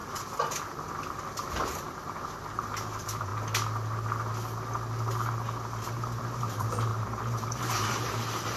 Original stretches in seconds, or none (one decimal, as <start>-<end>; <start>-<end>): 0.0-1.5; 3.3-5.9